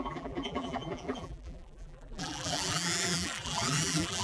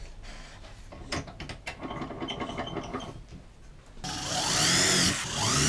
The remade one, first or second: first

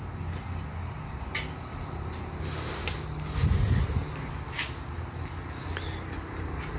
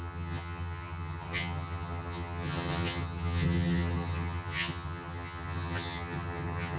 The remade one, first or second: second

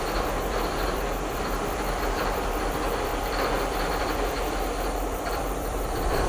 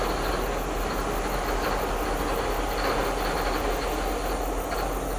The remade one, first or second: first